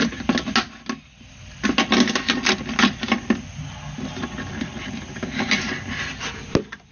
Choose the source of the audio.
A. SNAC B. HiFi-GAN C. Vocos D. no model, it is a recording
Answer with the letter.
D